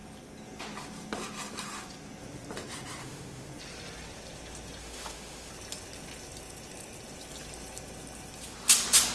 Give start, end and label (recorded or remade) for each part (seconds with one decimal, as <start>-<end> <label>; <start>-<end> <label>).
0.0-3.0 recorded; 3.0-3.5 remade; 3.5-4.8 recorded; 4.8-5.5 remade; 5.5-9.1 recorded